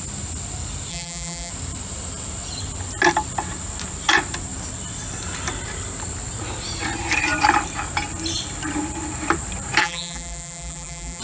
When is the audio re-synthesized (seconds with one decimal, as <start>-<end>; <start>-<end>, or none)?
0.9-1.5; 9.8-11.2